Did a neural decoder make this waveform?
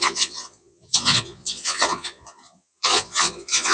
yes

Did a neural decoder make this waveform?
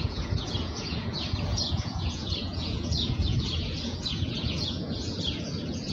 yes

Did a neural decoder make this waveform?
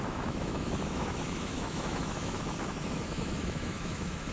yes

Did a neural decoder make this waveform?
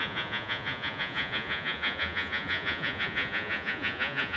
yes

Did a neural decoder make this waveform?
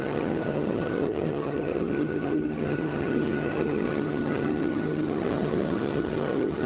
yes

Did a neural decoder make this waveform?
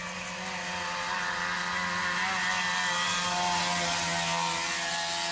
no